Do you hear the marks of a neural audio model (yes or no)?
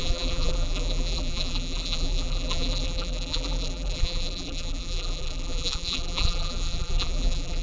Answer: yes